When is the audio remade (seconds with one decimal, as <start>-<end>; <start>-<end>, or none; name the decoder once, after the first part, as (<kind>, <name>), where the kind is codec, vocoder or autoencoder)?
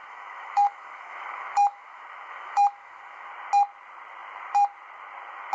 0.0-3.3 (autoencoder, DAC-VAE)